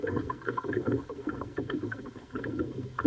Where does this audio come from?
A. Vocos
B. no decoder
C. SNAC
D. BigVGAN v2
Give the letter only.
C